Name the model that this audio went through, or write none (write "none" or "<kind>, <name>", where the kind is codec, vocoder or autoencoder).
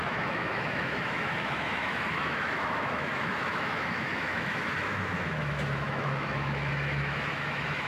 autoencoder, DAC-VAE